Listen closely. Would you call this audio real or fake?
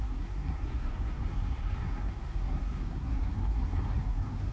fake